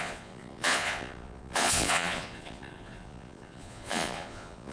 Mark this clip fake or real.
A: fake